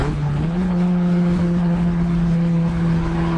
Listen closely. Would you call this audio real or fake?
fake